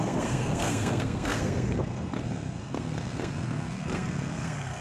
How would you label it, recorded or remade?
remade